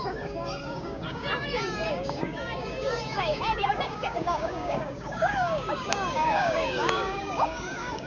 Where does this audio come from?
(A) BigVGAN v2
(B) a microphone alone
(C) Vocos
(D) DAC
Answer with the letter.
D